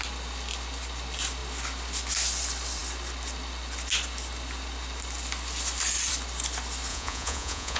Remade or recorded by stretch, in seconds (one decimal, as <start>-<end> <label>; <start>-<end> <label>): 0.0-6.9 recorded; 6.9-7.8 remade